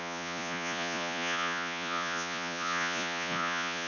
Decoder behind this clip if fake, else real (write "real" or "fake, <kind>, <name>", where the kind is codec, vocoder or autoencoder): fake, vocoder, Vocos